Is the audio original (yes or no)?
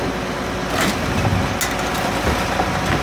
yes